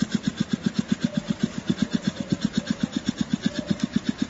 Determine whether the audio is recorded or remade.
remade